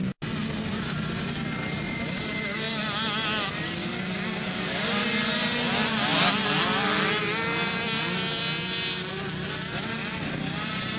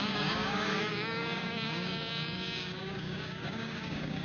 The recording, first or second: first